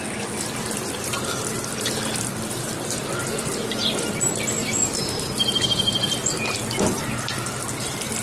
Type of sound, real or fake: real